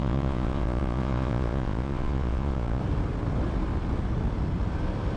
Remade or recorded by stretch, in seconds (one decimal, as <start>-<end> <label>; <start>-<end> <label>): 0.0-2.8 remade; 2.8-5.2 recorded